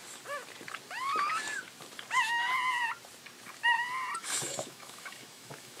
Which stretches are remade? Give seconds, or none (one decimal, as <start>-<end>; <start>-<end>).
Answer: 4.2-5.8